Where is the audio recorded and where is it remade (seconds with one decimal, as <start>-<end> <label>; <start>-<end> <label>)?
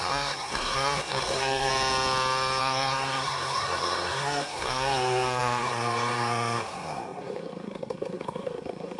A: 0.0-1.7 remade; 1.7-2.6 recorded; 2.6-9.0 remade